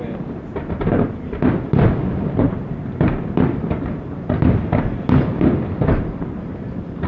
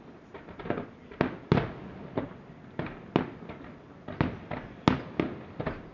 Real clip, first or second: second